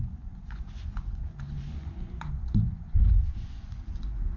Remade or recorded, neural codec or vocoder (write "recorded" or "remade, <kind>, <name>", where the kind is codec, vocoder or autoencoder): remade, vocoder, Vocos